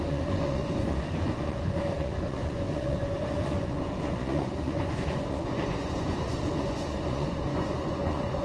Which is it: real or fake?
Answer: fake